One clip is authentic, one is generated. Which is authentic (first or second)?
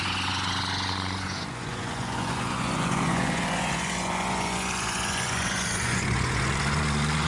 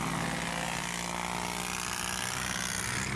second